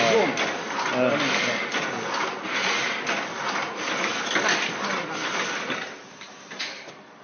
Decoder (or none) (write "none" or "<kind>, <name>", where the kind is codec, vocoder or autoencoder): none